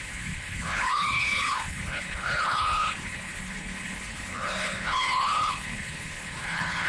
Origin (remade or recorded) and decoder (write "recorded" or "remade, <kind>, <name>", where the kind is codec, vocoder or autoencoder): remade, codec, HILCodec